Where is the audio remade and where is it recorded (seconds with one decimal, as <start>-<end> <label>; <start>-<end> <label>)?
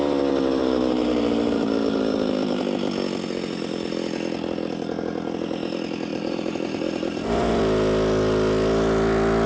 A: 0.0-0.6 recorded; 0.6-2.6 remade; 2.6-6.1 recorded; 6.1-7.5 remade; 7.5-9.5 recorded